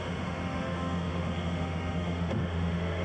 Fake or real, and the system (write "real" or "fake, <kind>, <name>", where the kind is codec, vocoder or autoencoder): fake, autoencoder, DAC-VAE